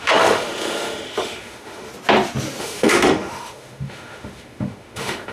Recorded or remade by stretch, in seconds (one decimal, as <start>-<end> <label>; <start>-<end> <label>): 0.0-1.9 remade; 1.9-2.6 recorded; 2.6-5.3 remade